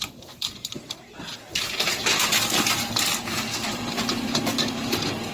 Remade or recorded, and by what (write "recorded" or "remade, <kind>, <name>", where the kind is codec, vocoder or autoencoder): remade, vocoder, BigVGAN v2